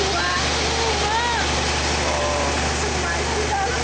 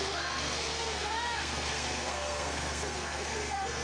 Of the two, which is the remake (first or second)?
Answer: second